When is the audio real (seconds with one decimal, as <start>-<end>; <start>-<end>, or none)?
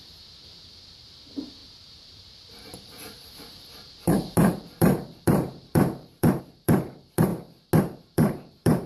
7.3-8.0